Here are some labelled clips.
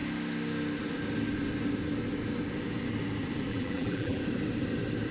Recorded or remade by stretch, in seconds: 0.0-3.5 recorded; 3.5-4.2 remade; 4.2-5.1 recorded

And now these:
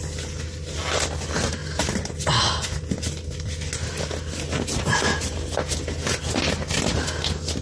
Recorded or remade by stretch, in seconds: 0.0-7.6 recorded

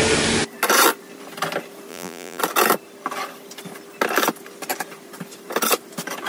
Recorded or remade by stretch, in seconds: 0.0-1.9 recorded; 1.9-2.4 remade; 2.4-6.3 recorded

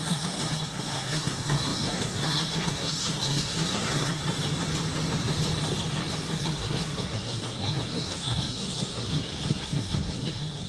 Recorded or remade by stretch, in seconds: 0.0-4.2 remade; 4.2-6.3 recorded; 6.3-10.7 remade